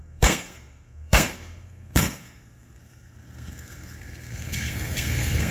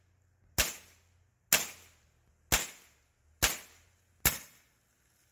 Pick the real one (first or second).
second